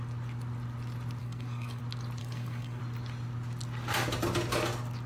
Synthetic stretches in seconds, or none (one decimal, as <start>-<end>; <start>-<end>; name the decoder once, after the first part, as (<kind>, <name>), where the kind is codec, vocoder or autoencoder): 1.2-1.8 (codec, SNAC); 2.2-2.8